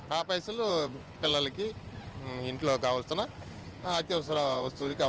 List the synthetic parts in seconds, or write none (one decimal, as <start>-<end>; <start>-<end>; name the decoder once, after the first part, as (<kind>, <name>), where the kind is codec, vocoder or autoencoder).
0.7-1.3 (vocoder, Vocos); 3.8-5.1